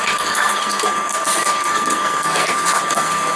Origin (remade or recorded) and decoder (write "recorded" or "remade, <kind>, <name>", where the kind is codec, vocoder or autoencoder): remade, codec, SNAC